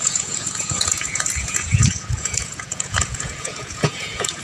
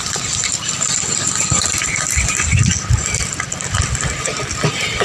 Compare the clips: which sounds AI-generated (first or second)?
first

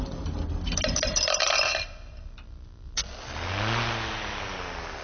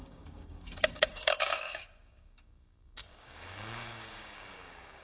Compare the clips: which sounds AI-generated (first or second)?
second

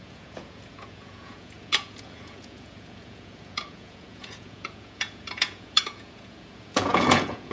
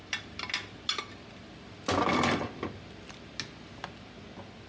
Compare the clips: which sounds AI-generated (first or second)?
first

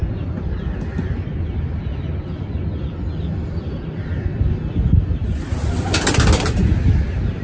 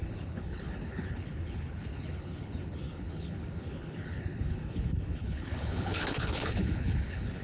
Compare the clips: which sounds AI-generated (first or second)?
second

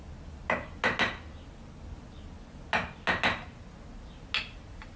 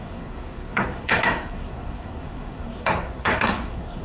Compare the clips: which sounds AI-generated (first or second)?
second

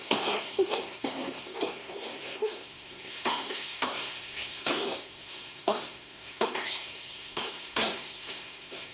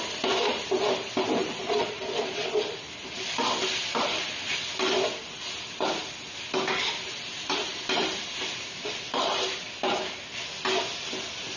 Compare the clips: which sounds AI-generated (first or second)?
first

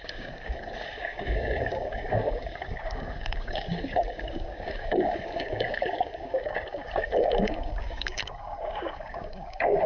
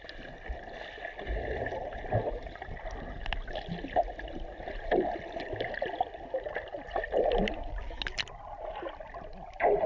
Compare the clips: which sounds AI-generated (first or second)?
first